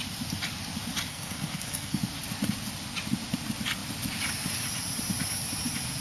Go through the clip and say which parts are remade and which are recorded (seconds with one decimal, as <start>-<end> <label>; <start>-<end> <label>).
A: 0.0-1.1 recorded; 1.1-2.0 remade; 2.0-6.0 recorded